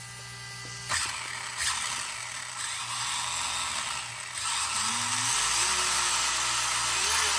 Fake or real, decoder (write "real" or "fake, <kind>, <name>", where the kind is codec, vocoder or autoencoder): real